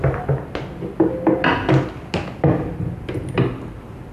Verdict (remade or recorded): recorded